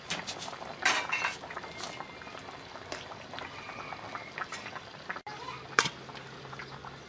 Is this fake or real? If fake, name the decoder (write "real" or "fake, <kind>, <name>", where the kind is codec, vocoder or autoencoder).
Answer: real